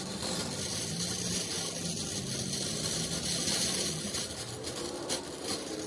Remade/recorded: recorded